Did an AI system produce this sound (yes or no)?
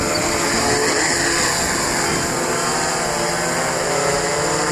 no